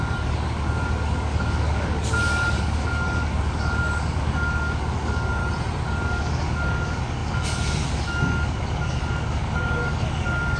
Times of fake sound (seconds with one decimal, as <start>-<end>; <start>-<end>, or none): 0.0-5.4; 5.9-10.6